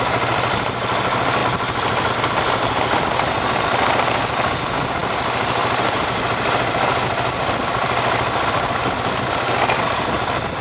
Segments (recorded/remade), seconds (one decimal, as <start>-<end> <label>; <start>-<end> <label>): 0.0-10.6 recorded